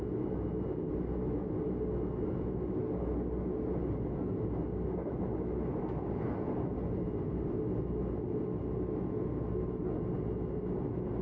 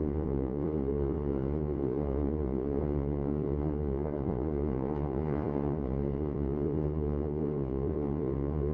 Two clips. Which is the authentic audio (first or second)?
first